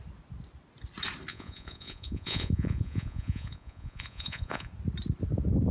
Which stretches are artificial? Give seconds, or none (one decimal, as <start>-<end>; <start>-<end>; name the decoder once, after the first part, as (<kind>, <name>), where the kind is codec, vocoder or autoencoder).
1.3-4.7 (vocoder, Vocos)